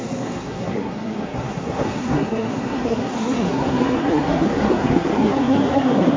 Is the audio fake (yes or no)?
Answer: yes